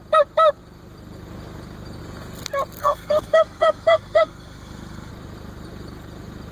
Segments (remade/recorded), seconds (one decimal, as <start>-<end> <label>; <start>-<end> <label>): 0.0-2.8 recorded; 2.8-5.1 remade; 5.1-6.5 recorded